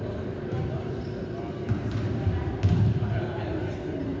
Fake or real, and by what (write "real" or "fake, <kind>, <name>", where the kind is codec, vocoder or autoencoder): real